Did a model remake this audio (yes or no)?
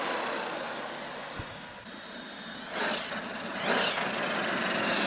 no